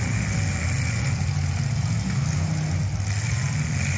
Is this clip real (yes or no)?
yes